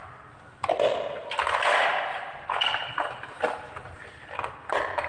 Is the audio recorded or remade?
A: recorded